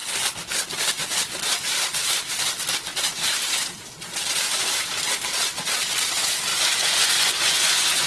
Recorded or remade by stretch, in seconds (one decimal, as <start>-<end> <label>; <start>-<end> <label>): 0.0-6.5 recorded; 6.5-8.1 remade